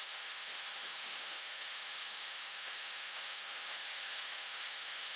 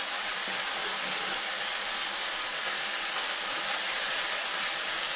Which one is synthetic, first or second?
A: first